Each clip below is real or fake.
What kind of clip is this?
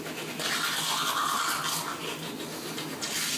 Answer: real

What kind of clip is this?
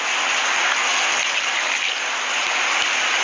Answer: real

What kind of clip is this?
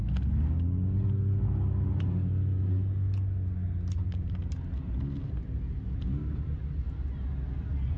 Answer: real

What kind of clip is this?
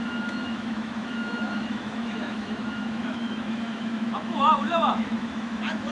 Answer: fake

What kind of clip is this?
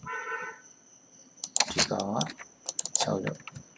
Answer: real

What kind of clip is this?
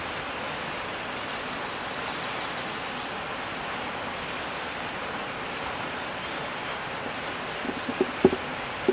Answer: real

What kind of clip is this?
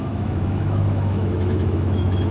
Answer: fake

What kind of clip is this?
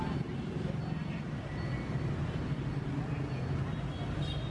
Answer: real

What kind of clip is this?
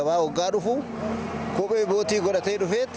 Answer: real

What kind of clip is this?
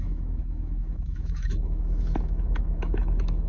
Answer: fake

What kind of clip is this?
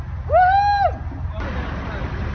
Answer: real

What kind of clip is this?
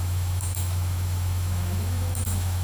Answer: fake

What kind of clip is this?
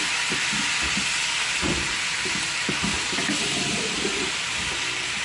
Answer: real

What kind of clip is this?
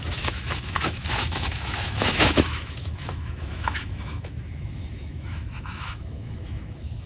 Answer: fake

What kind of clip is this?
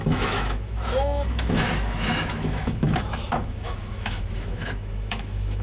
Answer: fake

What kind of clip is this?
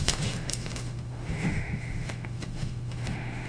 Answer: fake